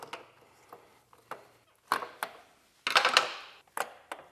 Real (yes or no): yes